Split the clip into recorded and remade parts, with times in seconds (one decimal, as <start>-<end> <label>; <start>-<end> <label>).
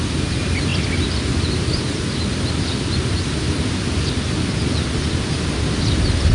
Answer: 0.0-6.3 recorded